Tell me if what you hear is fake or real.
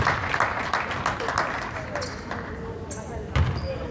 real